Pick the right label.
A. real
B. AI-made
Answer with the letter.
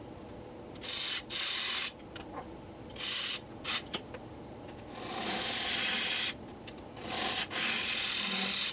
A